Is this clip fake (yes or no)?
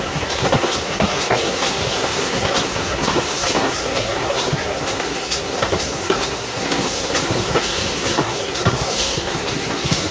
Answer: yes